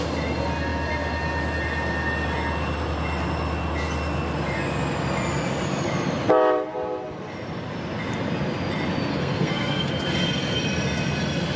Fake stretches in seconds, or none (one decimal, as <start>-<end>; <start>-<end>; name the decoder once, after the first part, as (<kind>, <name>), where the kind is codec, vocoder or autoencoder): 9.1-9.9 (codec, SNAC)